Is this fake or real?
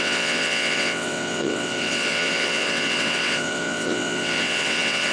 fake